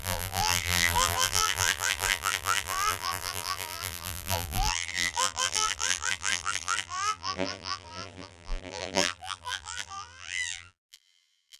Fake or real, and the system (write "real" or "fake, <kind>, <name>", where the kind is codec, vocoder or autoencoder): fake, vocoder, BigVGAN v2